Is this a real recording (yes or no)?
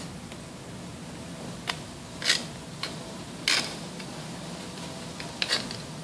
yes